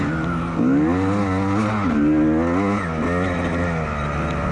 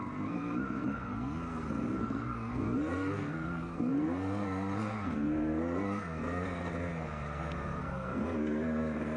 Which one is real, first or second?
first